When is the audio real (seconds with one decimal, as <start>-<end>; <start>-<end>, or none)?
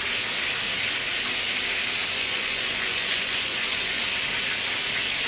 0.0-2.1; 4.0-5.3